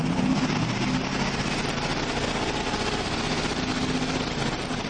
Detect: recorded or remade recorded